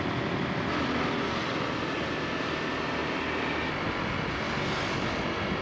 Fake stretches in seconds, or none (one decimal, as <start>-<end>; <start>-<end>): none